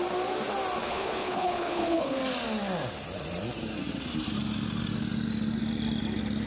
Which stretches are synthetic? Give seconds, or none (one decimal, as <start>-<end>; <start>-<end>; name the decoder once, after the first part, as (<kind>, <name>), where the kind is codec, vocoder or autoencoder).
0.8-2.2 (codec, HILCodec)

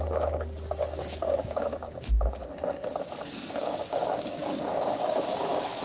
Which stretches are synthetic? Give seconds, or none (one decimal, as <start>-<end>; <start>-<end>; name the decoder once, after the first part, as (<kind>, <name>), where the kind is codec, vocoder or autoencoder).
0.0-2.4 (codec, DAC); 3.2-5.8

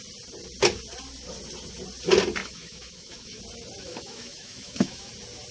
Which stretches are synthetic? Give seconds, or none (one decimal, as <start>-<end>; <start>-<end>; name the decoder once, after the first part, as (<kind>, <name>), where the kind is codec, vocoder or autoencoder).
2.4-3.4 (autoencoder, DAC-VAE); 3.8-5.1

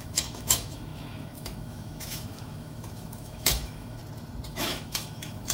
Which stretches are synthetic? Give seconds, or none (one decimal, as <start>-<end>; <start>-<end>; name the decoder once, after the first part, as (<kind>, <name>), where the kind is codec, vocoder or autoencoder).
0.0-4.0 (autoencoder, DAC-VAE); 4.5-5.5

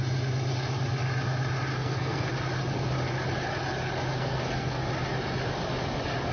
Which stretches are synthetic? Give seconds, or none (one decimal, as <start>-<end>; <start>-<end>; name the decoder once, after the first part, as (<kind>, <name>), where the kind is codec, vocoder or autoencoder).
1.7-2.3 (codec, SNAC); 4.1-4.9

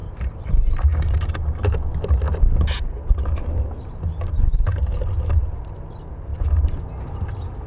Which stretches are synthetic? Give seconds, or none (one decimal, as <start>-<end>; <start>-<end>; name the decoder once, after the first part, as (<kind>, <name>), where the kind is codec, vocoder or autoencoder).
0.0-0.5 (vocoder, BigVGAN v2)

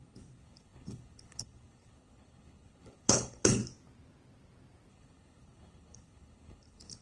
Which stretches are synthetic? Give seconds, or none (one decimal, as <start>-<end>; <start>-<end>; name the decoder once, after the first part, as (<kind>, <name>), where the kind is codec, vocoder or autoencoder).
0.0-3.6 (codec, HILCodec); 4.9-7.0